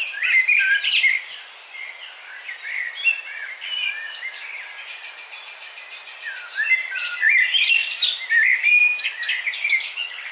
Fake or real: real